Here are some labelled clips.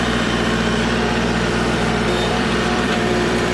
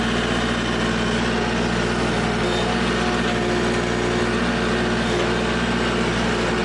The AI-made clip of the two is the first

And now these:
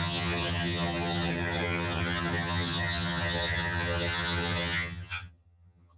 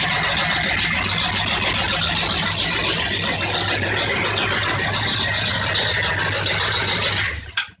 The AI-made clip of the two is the first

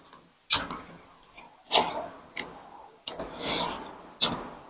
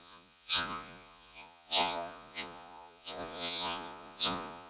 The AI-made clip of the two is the second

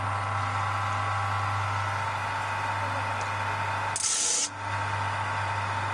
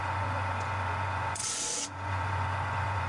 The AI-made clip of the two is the second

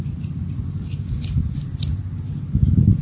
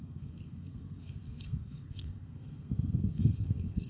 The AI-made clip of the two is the second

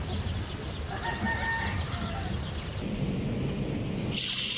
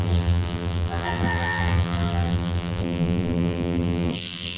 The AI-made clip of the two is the second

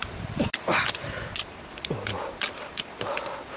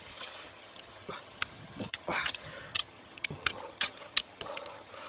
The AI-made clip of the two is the second